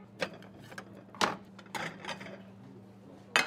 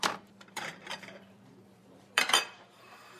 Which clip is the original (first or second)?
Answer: first